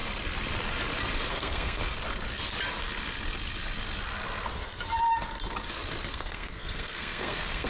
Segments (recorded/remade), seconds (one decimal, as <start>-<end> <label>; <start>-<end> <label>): 0.0-1.3 recorded; 1.3-1.8 remade; 1.8-6.1 recorded; 6.1-7.7 remade